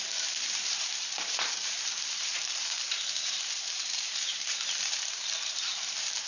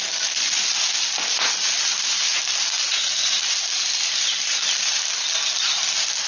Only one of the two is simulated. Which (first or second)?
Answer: first